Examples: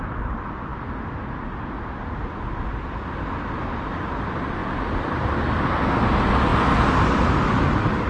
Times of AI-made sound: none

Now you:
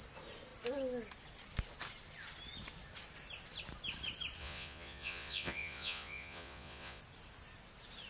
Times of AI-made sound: 4.4-7.0 (vocoder, Vocos)